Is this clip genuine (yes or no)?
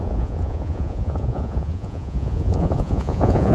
no